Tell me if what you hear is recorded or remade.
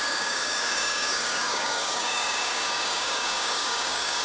remade